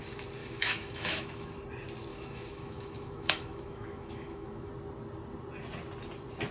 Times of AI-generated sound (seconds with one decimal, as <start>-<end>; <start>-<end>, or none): 0.4-1.6; 2.1-4.7